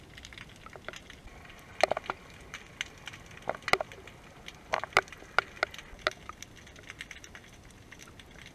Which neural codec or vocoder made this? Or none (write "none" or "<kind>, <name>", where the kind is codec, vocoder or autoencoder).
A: none